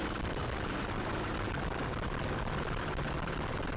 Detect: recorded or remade remade